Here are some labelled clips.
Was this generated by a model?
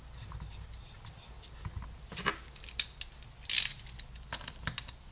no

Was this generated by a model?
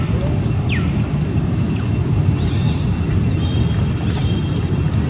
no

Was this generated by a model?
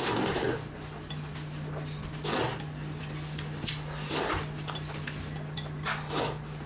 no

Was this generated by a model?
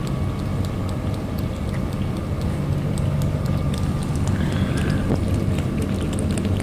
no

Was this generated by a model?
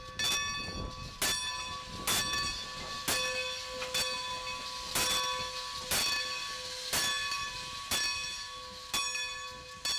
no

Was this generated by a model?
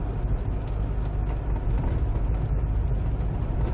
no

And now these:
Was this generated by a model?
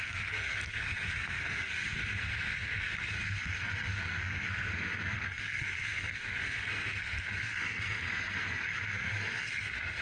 yes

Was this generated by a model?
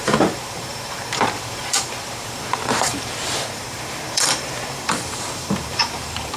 yes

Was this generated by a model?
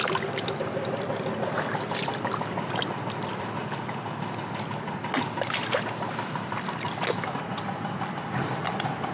yes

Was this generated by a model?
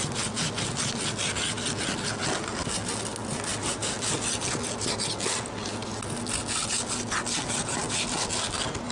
no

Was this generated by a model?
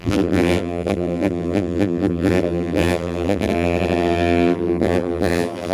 yes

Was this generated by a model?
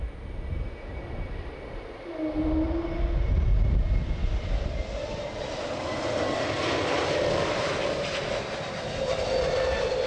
no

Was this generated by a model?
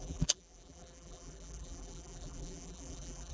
yes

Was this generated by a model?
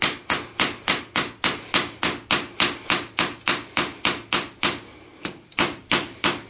no